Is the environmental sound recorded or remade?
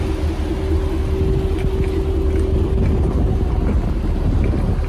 recorded